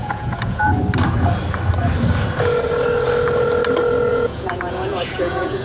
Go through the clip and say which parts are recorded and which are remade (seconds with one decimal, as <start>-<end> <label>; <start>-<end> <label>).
0.0-0.7 remade; 0.7-4.1 recorded; 4.1-5.6 remade